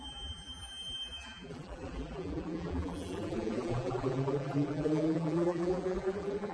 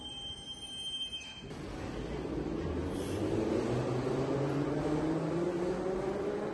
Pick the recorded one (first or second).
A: second